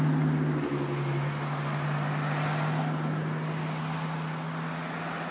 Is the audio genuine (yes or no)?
yes